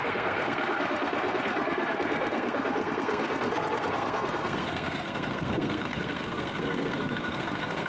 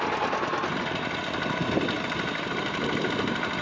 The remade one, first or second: first